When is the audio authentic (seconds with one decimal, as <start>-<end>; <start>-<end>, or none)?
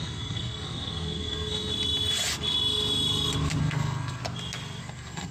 1.7-3.6; 4.2-4.8